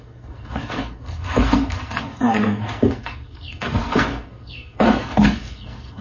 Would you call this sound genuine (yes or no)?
no